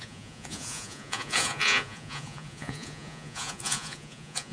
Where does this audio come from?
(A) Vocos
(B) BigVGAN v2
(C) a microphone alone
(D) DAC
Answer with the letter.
A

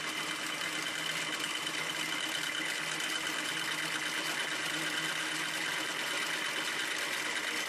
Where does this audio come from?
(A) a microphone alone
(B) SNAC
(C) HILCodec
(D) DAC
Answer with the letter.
A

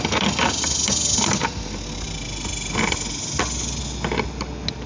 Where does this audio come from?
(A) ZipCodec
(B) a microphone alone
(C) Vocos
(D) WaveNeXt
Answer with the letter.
B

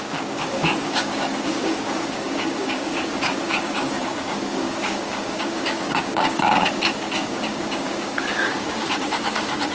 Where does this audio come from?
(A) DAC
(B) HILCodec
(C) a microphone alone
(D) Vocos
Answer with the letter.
A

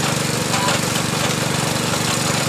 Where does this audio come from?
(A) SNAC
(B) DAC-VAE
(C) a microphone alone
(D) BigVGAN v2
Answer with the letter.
C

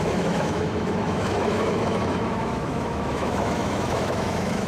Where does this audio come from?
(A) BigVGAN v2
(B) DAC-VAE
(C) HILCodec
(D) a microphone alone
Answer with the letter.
B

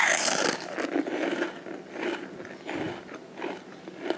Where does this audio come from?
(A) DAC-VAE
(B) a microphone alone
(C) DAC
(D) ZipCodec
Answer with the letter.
B